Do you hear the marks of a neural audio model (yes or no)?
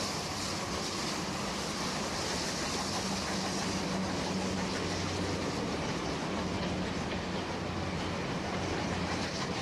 no